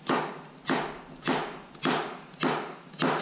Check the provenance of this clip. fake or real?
real